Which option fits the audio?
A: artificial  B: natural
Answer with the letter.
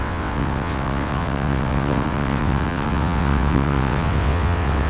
A